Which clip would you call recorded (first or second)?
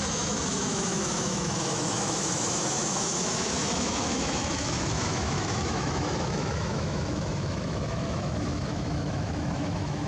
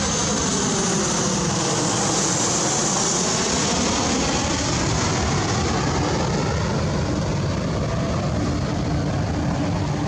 second